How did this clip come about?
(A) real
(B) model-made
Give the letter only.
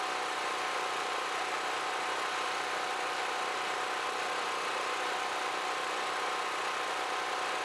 A